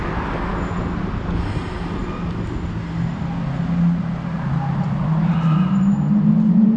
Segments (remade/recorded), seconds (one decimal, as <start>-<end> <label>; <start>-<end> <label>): 0.0-6.8 recorded